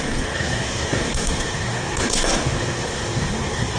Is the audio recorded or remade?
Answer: remade